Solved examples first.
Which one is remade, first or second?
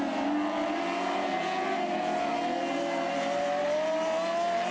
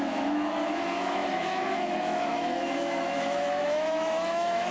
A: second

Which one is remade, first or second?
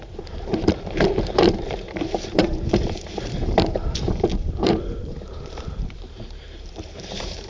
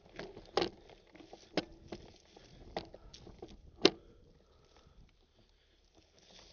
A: first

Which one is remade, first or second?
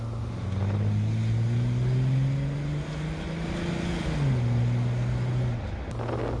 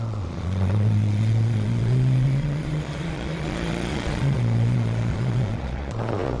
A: second